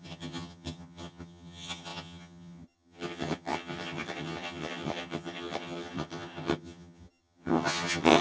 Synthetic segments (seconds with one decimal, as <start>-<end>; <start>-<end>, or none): 0.0-8.2